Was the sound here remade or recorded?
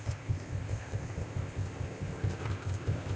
remade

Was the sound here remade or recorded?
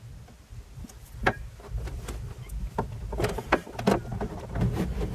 recorded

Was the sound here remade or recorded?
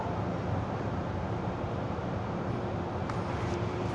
remade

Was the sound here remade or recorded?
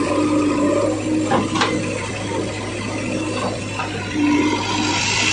recorded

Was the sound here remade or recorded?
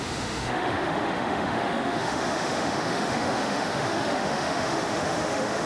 remade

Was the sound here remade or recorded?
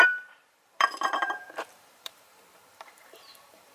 remade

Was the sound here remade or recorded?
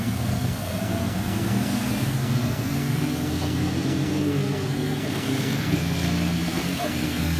remade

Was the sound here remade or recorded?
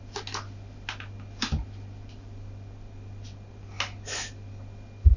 recorded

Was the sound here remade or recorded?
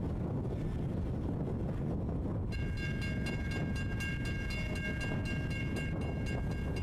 recorded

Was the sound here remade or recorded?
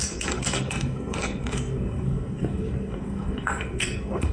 remade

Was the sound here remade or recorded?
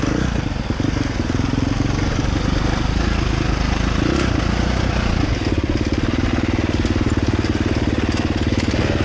recorded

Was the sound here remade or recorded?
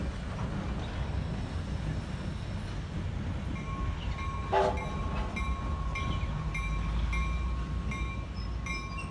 recorded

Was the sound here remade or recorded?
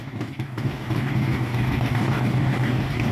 remade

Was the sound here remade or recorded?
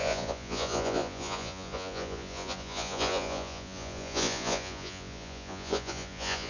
remade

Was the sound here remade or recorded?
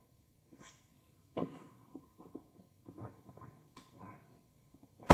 remade